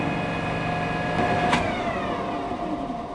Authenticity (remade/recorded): recorded